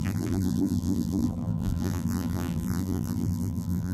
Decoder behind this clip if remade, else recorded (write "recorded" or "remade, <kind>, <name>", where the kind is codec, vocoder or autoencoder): remade, vocoder, BigVGAN v2